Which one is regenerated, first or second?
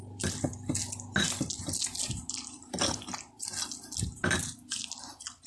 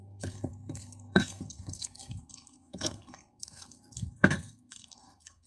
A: second